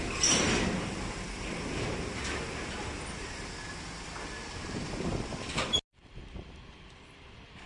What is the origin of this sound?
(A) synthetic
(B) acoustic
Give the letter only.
B